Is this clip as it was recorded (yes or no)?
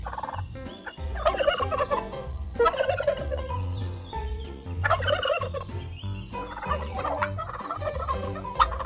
no